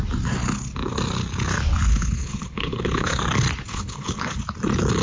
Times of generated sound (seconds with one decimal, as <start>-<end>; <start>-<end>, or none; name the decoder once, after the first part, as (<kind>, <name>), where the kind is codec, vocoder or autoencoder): 1.9-3.2 (codec, HILCodec); 3.7-4.4